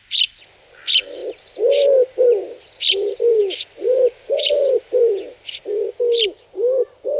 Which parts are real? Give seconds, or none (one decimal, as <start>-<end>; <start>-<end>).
0.0-3.8; 4.7-7.2